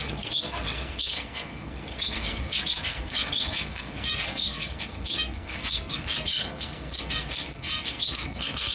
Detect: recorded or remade remade